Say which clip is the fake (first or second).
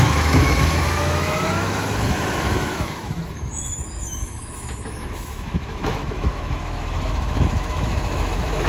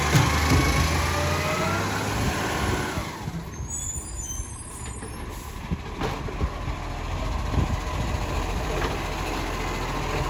first